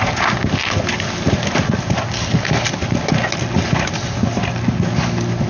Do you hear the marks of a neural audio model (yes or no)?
no